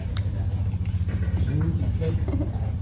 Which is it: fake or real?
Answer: real